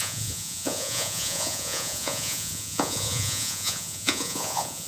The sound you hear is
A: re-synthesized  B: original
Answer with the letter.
A